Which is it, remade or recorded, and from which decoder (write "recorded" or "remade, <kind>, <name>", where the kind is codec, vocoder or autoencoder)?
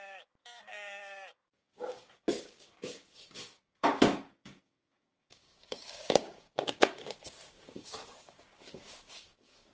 remade, codec, DAC